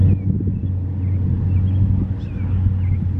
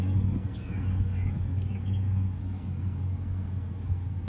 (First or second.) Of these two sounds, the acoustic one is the first